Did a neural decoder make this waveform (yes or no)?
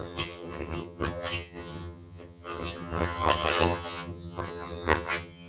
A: yes